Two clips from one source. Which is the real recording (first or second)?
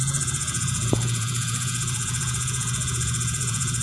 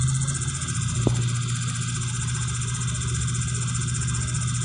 second